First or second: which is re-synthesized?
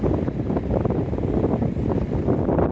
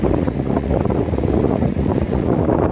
second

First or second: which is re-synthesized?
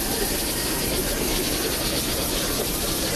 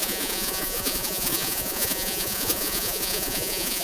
second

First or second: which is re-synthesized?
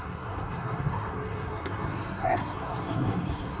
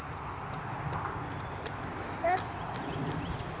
first